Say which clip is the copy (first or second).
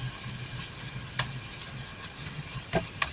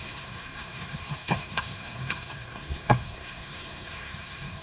second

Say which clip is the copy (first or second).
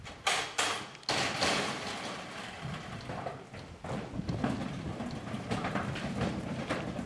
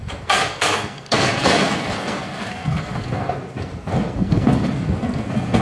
second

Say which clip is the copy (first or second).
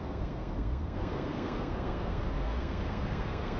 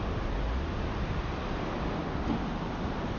first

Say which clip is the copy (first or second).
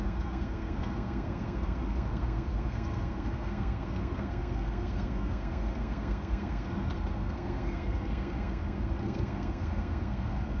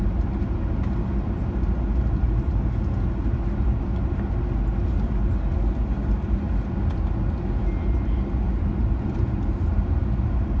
first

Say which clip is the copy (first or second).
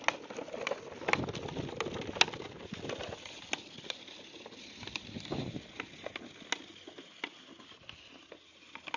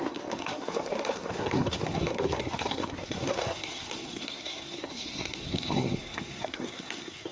second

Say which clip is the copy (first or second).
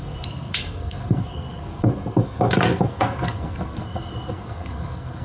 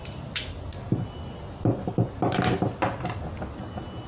first